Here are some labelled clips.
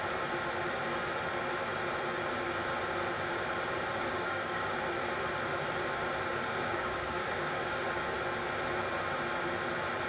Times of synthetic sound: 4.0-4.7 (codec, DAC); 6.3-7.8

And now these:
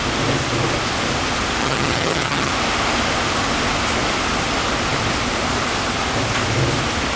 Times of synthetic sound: 1.6-2.5 (vocoder, HiFi-GAN)

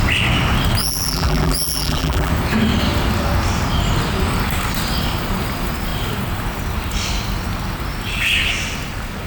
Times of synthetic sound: 0.8-2.3 (vocoder, BigVGAN v2)

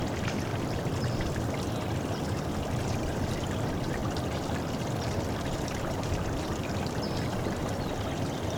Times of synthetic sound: 0.5-1.6 (vocoder, BigVGAN v2); 4.0-7.8

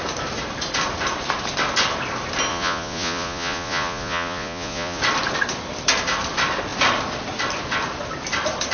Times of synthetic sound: 2.5-5.0 (vocoder, Vocos)

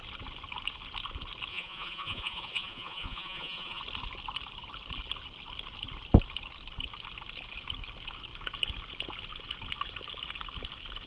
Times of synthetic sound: 1.5-3.8 (vocoder, Vocos)

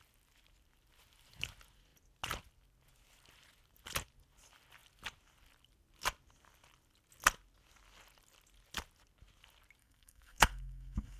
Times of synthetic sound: 9.8-11.2 (codec, SNAC)

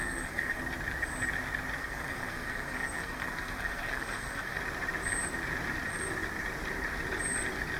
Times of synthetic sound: 0.0-0.6 (codec, SNAC); 1.8-4.6